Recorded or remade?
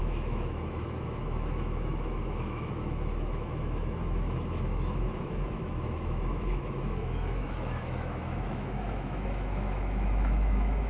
remade